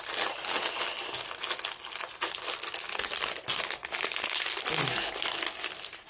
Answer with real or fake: real